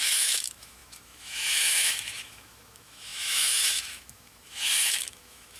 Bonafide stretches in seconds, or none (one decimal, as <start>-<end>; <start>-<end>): none